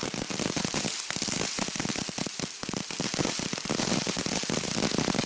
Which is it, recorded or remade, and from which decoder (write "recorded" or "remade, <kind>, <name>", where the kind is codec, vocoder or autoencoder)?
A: recorded